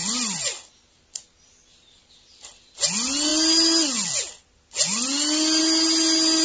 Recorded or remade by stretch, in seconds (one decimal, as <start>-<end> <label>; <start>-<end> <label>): 0.0-6.4 recorded